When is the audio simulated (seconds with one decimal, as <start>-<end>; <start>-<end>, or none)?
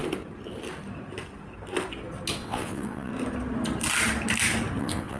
2.3-3.1; 4.8-5.2